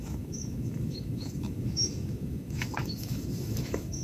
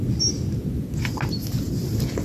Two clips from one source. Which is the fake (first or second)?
first